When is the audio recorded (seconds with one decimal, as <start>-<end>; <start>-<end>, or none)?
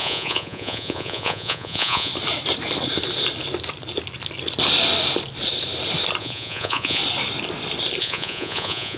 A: 2.1-6.2; 7.0-8.0